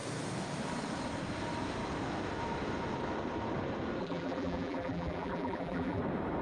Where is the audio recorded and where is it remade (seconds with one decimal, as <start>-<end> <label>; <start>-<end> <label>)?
0.0-4.0 recorded; 4.0-6.0 remade; 6.0-6.4 recorded